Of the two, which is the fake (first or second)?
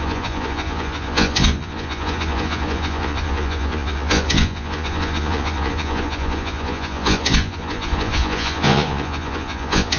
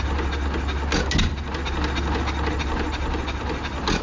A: first